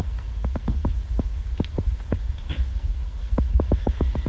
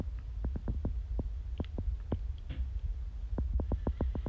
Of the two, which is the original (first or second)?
second